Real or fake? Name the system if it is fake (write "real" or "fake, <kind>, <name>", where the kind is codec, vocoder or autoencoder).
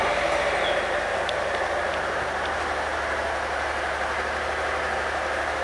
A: fake, vocoder, BigVGAN v2